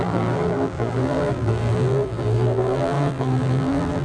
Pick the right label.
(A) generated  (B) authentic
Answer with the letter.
A